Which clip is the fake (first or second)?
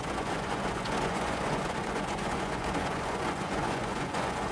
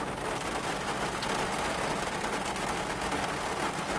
first